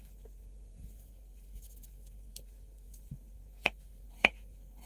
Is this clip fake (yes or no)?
yes